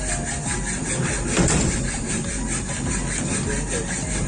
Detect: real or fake real